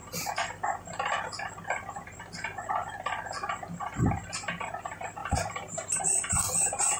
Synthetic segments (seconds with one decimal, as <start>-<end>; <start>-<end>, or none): 5.2-6.0